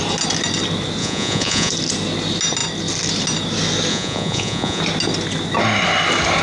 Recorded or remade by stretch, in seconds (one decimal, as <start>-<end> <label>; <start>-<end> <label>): 0.0-1.0 recorded; 1.0-1.7 remade; 1.7-3.9 recorded; 3.9-4.8 remade; 4.8-6.4 recorded